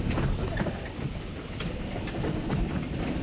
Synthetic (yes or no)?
yes